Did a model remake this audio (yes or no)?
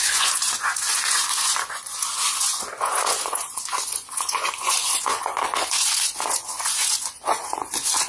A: yes